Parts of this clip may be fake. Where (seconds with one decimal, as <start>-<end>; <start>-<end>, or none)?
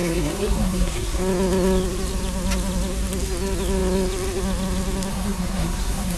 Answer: 0.0-1.2; 5.1-6.2